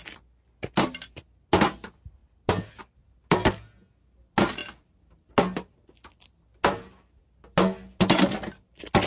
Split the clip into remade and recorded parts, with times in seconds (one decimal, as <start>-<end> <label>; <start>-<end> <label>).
0.0-9.1 recorded